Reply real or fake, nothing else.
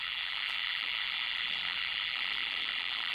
fake